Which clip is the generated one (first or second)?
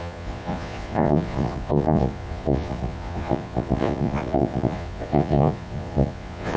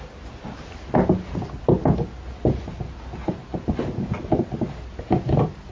first